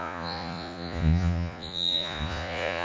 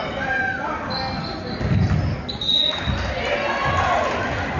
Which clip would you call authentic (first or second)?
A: second